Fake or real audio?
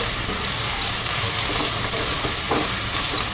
real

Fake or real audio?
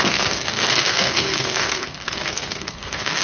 fake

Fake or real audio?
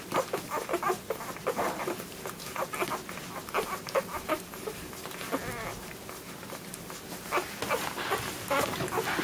real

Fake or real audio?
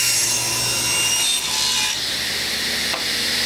real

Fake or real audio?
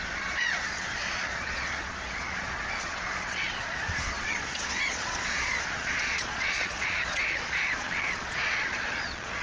fake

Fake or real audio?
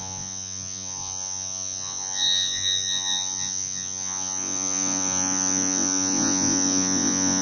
fake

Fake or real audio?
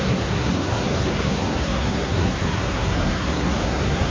fake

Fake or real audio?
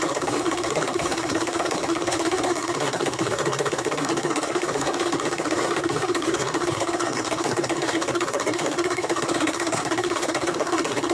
fake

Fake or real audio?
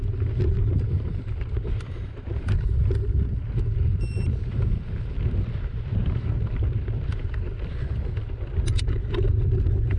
real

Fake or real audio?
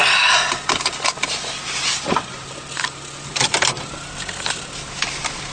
real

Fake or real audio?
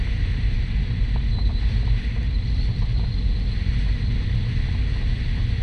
real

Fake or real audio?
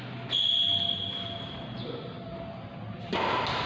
real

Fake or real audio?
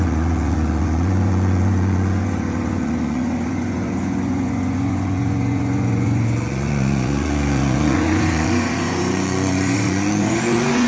fake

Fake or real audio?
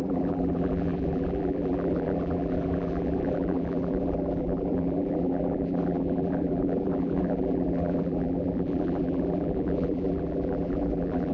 fake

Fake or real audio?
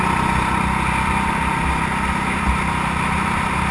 real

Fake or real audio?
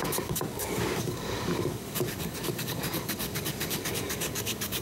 fake